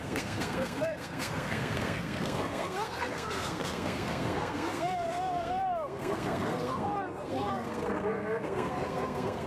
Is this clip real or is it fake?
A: fake